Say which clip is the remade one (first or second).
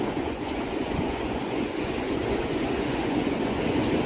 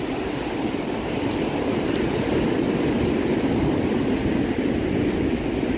first